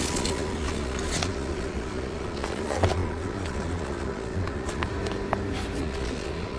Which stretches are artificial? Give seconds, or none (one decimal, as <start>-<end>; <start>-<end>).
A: 0.0-4.9; 5.8-6.6